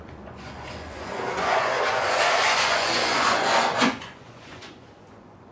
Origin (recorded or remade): remade